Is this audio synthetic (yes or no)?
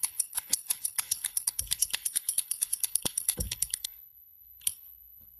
yes